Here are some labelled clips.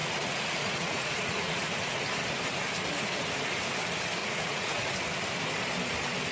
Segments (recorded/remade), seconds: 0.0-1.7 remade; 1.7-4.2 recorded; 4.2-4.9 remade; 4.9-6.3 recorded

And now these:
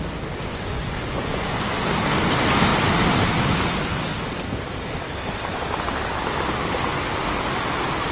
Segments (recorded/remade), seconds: 0.0-0.5 recorded; 0.5-1.6 remade; 1.6-8.1 recorded

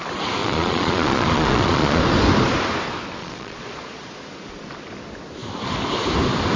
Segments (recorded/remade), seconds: 0.0-0.4 recorded; 0.4-2.0 remade; 2.0-3.2 recorded; 3.2-4.1 remade; 4.1-6.6 recorded

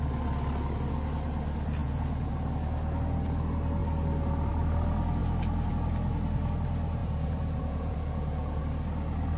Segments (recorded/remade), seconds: 0.0-1.8 recorded; 1.8-2.3 remade; 2.3-7.0 recorded; 7.0-8.6 remade; 8.6-9.4 recorded

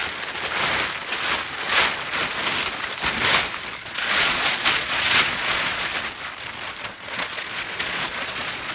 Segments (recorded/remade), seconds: 0.0-3.8 recorded; 3.8-5.9 remade; 5.9-6.8 recorded; 6.8-8.7 remade

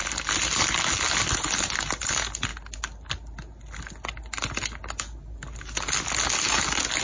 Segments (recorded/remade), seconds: 0.0-7.0 recorded

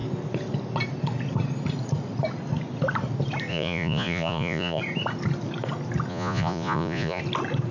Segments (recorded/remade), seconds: 0.0-3.5 recorded; 3.5-4.8 remade; 4.8-6.1 recorded; 6.1-7.2 remade; 7.2-7.7 recorded

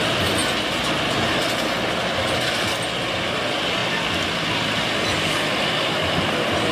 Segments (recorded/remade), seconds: 0.0-6.7 recorded